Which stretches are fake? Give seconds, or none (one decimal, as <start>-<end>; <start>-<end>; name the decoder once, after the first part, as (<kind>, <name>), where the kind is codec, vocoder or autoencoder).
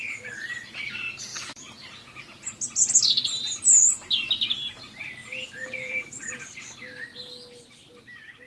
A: 1.3-2.2 (vocoder, Vocos); 5.2-6.2